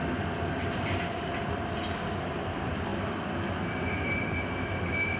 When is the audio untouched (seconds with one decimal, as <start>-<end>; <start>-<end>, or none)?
0.0-5.2